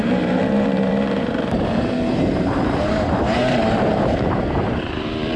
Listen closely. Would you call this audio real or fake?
fake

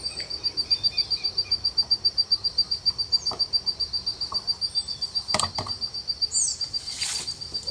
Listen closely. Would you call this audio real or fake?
fake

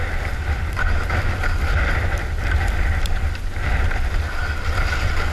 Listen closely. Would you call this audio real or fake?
real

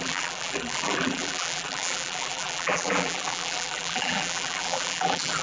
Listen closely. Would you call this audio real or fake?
fake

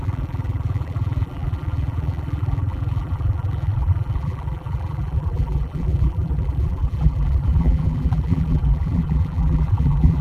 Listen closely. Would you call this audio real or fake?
fake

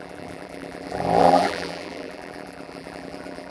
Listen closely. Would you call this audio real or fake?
fake